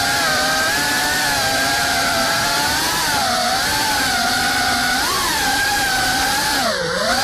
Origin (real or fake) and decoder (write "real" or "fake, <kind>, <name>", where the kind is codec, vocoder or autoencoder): fake, vocoder, BigVGAN v2